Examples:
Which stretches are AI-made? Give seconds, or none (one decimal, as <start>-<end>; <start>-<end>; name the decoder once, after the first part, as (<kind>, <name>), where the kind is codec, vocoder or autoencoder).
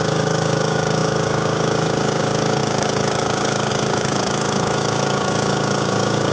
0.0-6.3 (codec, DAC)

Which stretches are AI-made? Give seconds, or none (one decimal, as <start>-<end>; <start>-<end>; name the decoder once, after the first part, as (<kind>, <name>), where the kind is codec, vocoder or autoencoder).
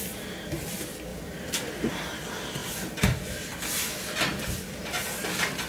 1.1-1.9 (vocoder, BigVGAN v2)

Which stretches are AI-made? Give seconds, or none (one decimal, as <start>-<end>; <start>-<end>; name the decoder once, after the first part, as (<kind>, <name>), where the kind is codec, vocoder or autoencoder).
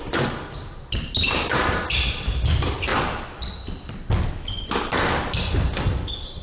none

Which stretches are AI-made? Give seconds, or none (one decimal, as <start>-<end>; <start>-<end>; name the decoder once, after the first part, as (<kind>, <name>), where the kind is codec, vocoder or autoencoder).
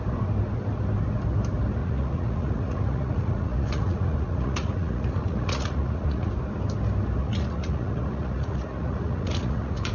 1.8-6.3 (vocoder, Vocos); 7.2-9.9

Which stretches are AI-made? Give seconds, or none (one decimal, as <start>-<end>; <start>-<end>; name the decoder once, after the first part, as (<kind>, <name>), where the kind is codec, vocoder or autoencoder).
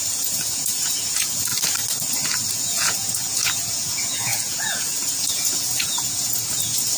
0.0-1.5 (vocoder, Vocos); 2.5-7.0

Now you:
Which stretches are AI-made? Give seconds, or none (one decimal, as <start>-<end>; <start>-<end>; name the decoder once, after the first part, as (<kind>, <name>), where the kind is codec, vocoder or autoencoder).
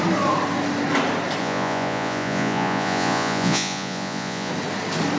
1.4-4.5 (vocoder, Vocos)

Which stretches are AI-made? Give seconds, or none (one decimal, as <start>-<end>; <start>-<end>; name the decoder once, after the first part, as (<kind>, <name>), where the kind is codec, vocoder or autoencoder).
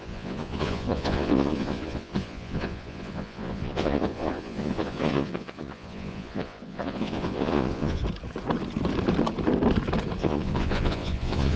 0.0-8.0 (vocoder, Vocos); 10.2-11.6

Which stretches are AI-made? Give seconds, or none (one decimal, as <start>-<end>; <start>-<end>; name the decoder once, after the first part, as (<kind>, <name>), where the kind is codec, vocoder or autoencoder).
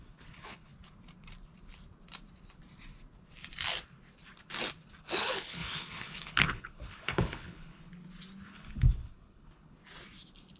0.0-0.7 (codec, HILCodec); 5.0-7.9; 8.5-9.8